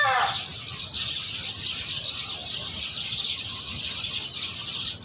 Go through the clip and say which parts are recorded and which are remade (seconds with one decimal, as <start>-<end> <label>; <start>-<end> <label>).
0.0-5.0 recorded